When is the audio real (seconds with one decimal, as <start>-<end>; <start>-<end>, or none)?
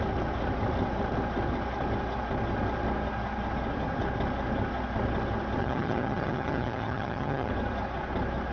0.0-5.6; 7.5-8.5